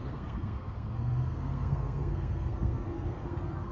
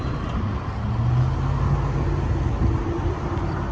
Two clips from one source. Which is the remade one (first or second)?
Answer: first